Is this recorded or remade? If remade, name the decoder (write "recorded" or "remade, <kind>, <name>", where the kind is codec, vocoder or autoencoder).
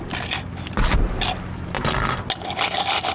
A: recorded